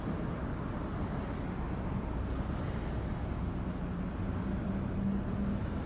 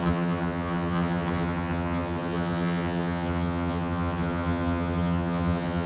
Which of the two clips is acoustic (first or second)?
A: first